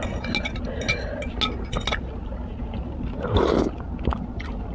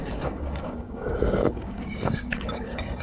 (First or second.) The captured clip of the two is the first